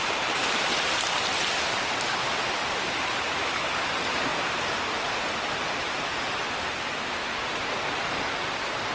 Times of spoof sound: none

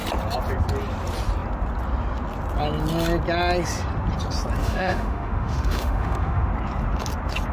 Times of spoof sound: 4.6-6.5 (autoencoder, DAC-VAE)

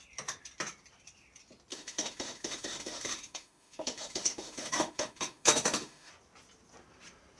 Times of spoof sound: 1.7-6.1 (autoencoder, DAC-VAE)

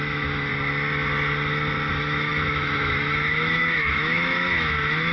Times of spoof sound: 0.0-0.5 (autoencoder, DAC-VAE); 1.9-5.1

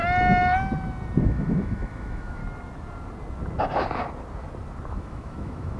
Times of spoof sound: 1.2-2.4 (autoencoder, DAC-VAE); 4.9-5.8

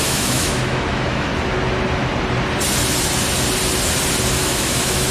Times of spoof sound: 0.0-1.3 (autoencoder, DAC-VAE); 4.4-5.1

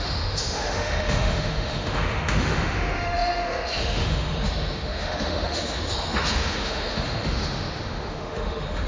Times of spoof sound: 0.0-8.9 (autoencoder, DAC-VAE)